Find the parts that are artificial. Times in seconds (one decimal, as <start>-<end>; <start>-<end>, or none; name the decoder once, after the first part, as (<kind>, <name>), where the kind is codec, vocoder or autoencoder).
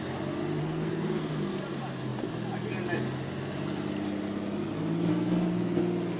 0.6-1.3 (codec, SNAC); 5.1-5.8